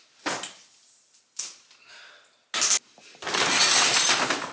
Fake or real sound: real